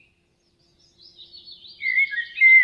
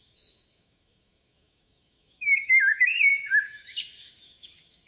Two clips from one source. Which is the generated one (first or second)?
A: second